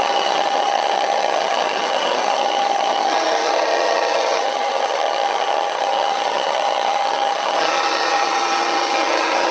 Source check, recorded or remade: remade